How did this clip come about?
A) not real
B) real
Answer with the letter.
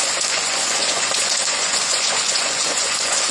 A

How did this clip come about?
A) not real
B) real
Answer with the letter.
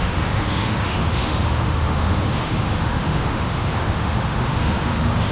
A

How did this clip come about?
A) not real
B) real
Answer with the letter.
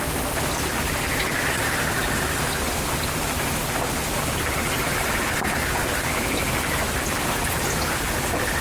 B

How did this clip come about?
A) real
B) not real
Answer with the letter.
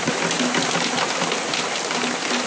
A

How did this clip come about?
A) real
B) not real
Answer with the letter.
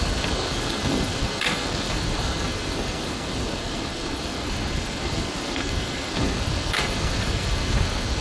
B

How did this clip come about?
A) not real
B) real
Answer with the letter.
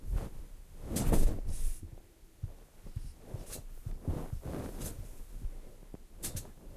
B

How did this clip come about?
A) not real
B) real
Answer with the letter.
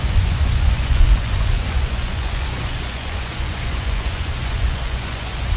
A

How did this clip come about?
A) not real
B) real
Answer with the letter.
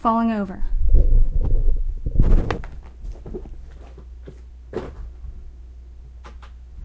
B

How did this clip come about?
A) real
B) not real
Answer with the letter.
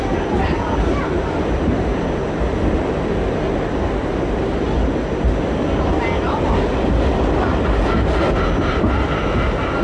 A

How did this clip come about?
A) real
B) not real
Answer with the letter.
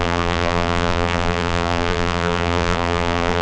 B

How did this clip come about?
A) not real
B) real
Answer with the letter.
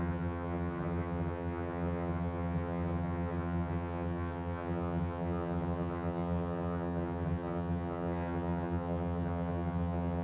A